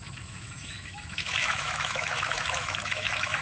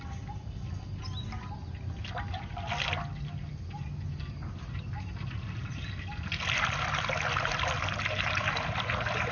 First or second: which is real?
second